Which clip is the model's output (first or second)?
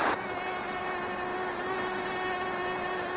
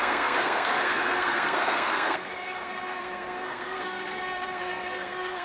second